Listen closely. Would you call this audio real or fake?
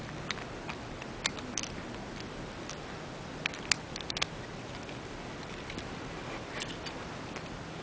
real